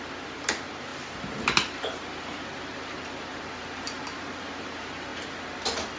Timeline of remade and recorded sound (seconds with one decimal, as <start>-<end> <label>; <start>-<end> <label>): 0.0-5.1 remade; 5.1-6.0 recorded